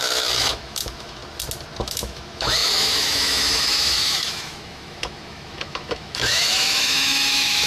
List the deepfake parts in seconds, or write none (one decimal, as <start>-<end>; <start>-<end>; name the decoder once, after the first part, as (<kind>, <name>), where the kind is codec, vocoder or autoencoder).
0.0-1.2 (autoencoder, DAC-VAE); 1.8-7.7